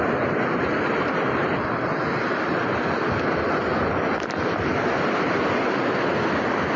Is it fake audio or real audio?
real